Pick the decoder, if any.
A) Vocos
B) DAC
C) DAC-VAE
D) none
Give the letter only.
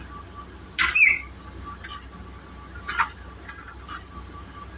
D